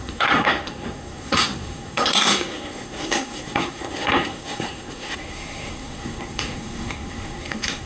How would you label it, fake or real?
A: fake